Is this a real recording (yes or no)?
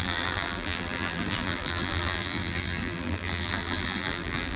no